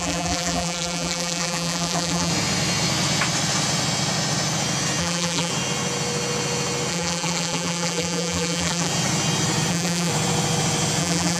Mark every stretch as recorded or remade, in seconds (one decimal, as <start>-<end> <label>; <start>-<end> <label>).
0.0-2.3 remade; 2.3-5.0 recorded; 5.0-5.5 remade; 5.5-6.9 recorded; 6.9-8.9 remade; 8.9-9.7 recorded; 9.7-10.1 remade; 10.1-11.0 recorded; 11.0-11.4 remade